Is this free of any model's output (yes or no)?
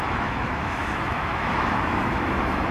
no